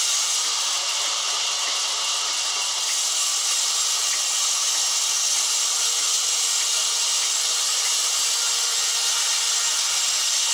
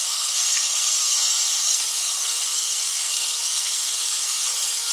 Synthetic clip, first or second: second